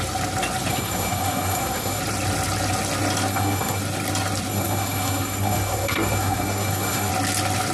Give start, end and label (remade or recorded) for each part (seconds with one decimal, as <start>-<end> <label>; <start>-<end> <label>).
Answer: 0.0-0.7 recorded; 0.7-2.0 remade; 2.0-3.3 recorded; 3.3-3.8 remade; 3.8-4.5 recorded; 4.5-7.1 remade; 7.1-7.7 recorded